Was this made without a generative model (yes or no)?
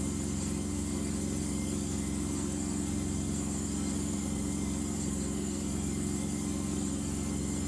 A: no